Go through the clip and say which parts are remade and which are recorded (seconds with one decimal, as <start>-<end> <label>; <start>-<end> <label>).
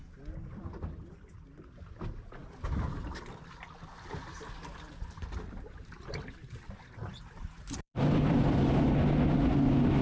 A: 0.0-7.0 recorded; 7.0-8.7 remade; 8.7-10.0 recorded